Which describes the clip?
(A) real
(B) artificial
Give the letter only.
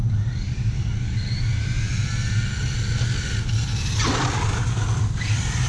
A